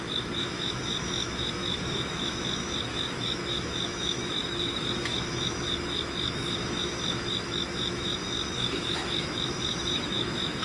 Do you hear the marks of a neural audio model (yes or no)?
yes